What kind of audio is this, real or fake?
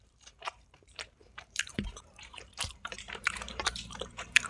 fake